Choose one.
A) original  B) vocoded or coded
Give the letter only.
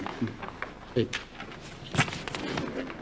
A